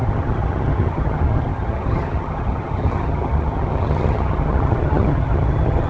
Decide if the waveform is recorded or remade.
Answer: remade